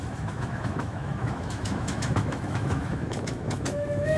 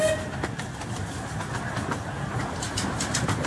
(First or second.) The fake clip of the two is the first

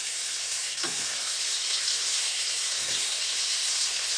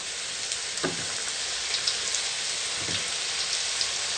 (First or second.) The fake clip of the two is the first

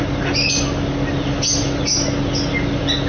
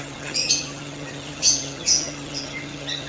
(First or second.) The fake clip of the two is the second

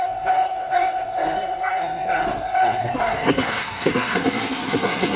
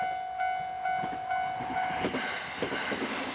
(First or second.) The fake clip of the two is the first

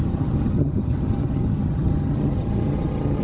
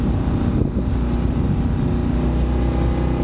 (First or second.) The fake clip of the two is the first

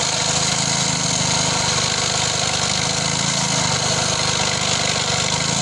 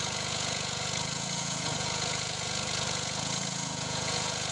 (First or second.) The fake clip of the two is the second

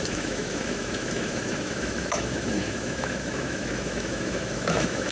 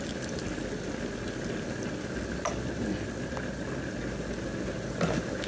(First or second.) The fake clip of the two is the first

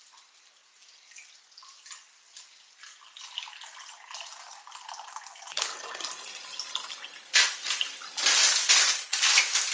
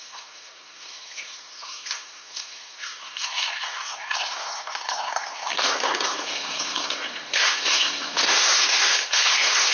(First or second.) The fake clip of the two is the second